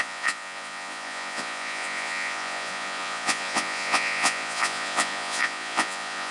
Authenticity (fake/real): fake